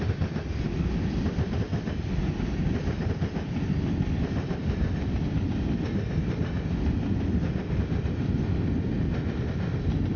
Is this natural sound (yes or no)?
yes